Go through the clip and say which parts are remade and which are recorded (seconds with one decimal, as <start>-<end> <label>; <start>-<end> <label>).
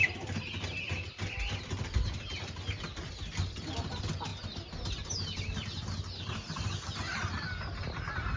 0.0-8.4 recorded